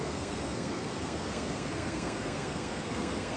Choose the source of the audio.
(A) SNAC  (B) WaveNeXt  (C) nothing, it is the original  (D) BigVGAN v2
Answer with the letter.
A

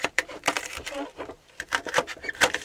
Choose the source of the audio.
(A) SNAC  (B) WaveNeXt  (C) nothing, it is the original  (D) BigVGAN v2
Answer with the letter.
D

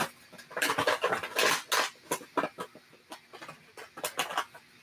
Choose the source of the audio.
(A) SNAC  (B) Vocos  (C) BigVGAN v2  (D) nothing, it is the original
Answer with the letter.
D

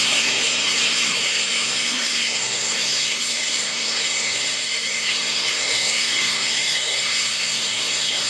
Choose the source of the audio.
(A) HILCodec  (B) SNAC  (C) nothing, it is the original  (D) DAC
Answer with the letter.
B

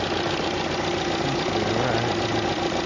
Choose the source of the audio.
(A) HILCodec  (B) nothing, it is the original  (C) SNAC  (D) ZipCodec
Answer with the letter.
B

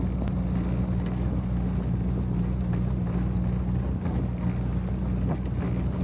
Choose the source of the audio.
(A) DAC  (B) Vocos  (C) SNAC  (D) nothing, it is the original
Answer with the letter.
D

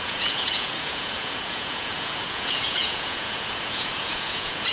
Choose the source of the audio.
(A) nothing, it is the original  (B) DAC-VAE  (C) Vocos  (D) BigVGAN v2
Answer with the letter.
C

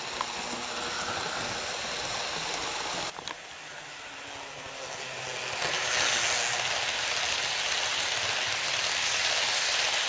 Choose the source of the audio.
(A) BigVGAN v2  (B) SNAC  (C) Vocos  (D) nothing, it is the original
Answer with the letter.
D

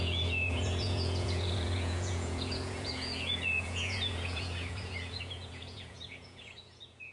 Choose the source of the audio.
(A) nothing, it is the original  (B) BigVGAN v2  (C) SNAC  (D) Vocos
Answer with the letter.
D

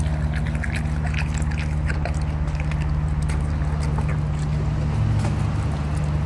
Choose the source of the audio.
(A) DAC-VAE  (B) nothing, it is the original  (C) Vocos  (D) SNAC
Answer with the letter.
B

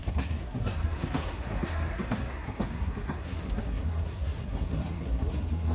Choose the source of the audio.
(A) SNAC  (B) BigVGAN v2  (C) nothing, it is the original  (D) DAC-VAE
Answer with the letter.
A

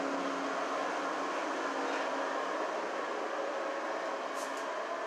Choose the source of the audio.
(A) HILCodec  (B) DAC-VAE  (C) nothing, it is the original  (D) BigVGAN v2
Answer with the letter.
C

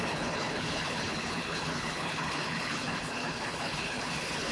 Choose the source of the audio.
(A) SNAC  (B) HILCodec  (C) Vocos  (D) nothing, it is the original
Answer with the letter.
B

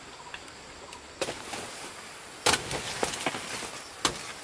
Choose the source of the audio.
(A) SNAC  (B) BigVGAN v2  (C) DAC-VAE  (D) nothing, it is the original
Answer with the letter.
D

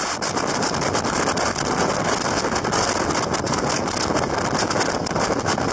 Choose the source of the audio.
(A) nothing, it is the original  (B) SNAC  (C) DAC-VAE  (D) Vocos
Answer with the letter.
A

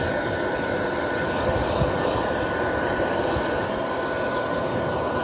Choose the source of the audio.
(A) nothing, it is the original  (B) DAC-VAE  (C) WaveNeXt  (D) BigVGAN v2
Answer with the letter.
D